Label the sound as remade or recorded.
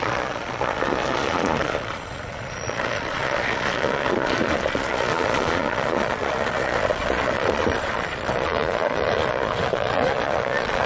remade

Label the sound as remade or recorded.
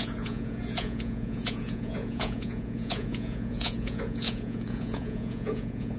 remade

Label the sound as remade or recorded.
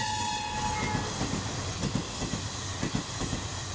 recorded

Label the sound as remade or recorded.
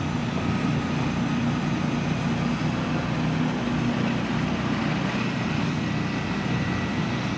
recorded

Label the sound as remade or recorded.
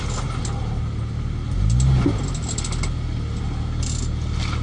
recorded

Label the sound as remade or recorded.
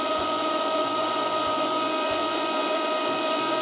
remade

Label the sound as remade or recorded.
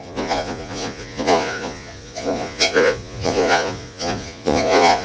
remade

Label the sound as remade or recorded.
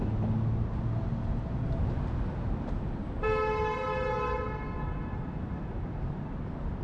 recorded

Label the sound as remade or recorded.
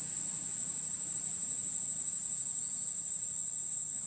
recorded